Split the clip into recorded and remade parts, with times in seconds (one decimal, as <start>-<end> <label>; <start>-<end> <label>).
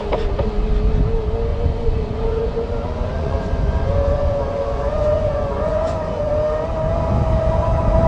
0.0-1.5 recorded; 1.5-6.3 remade; 6.3-8.1 recorded